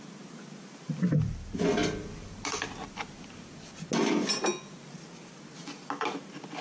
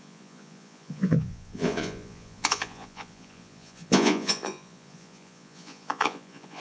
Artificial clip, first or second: second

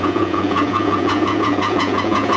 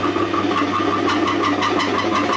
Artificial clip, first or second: first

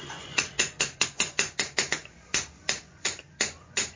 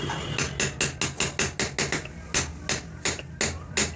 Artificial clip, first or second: first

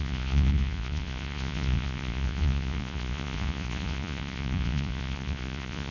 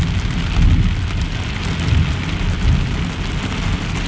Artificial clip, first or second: first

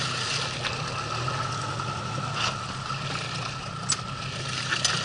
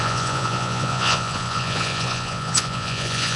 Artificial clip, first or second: second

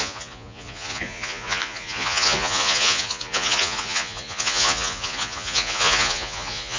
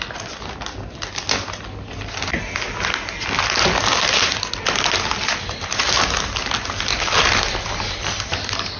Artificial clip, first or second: first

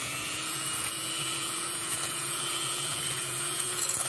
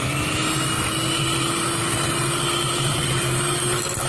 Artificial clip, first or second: first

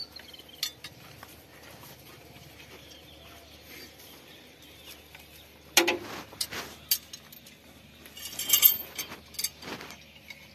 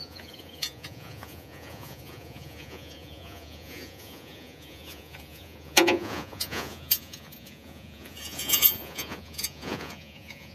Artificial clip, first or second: second